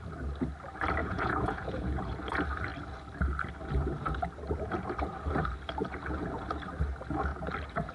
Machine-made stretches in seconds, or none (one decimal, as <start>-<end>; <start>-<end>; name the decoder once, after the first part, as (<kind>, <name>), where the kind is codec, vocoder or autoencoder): 1.0-2.1 (vocoder, Vocos)